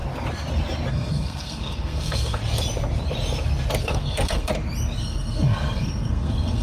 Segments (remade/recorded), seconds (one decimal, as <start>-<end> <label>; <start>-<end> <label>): 0.0-0.9 recorded; 0.9-2.4 remade; 2.4-3.8 recorded; 3.8-4.5 remade; 4.5-5.0 recorded; 5.0-6.6 remade